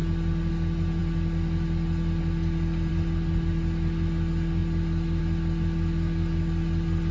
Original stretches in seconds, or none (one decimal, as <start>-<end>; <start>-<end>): 0.0-7.1